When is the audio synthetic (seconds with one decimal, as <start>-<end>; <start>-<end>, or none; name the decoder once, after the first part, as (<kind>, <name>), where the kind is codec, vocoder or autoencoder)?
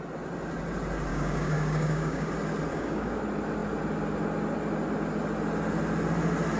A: 1.1-2.3 (codec, DAC); 2.7-3.2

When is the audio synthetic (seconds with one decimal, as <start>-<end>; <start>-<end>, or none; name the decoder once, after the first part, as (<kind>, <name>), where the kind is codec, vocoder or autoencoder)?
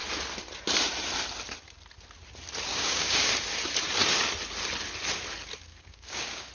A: 2.7-3.3 (codec, DAC); 5.7-6.5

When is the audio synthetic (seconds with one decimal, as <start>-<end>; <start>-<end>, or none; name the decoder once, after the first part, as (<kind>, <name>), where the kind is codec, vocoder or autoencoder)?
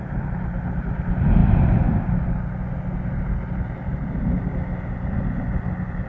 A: none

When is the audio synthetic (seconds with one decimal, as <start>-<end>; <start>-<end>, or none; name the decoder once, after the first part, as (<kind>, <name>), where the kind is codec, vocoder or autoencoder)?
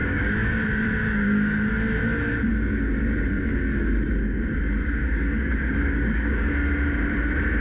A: 0.0-0.6 (codec, DAC); 1.0-1.7; 5.0-6.5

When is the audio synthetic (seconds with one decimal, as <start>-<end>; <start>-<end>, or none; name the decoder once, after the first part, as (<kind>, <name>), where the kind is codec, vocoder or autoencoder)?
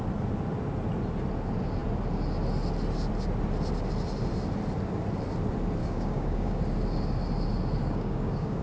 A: 5.8-6.6 (codec, DAC); 7.8-8.6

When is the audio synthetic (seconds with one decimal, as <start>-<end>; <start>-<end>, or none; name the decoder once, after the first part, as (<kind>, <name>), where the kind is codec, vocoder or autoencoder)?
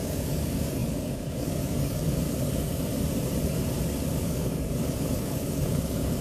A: 0.0-2.9 (codec, DAC); 4.2-6.2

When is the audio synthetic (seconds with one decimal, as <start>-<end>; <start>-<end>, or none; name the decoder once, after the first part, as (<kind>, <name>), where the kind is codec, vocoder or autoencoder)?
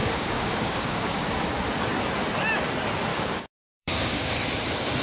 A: 0.0-1.6 (codec, DAC); 3.1-4.3